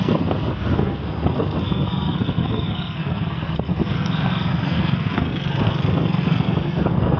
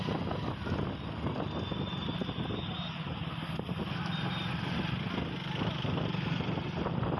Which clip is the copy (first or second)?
first